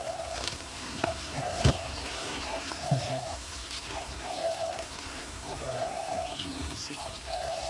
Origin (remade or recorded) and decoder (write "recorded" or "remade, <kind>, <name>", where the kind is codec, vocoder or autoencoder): remade, codec, SNAC